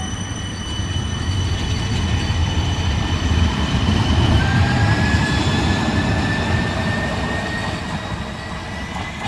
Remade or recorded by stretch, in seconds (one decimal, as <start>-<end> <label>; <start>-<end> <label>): 0.0-2.4 recorded; 2.4-4.4 remade; 4.4-9.3 recorded